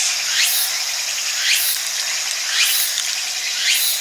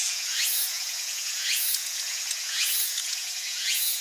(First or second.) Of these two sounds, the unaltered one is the first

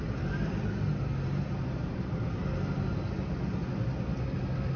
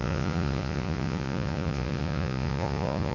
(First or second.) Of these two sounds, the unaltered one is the first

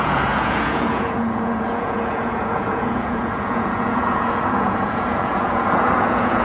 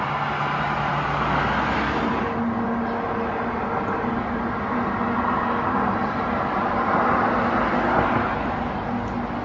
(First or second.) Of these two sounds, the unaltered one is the second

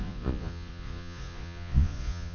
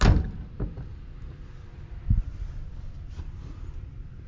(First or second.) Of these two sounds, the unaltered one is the second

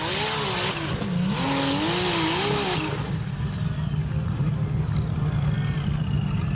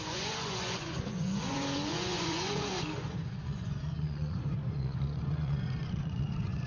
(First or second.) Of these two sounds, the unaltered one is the first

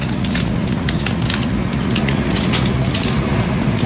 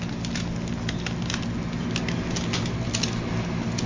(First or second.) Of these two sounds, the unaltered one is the second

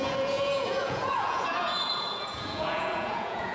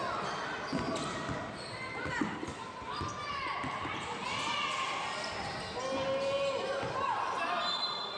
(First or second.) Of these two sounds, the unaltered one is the second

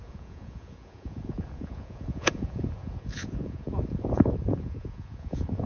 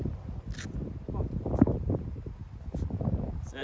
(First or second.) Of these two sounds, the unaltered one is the second